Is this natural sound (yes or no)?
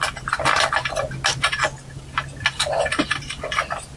yes